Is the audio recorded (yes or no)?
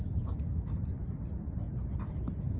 yes